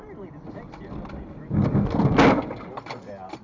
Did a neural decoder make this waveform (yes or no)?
no